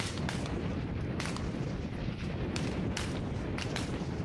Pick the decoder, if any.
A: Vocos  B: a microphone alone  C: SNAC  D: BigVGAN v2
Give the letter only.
D